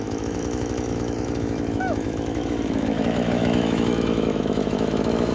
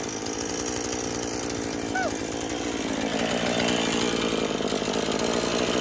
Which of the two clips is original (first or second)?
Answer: second